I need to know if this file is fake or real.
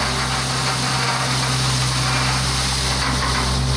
real